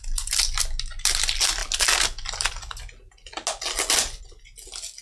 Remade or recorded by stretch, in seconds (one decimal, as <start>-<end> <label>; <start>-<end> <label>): 0.0-5.0 recorded